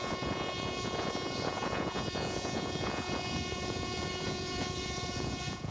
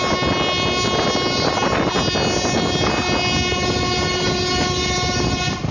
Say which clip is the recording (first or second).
second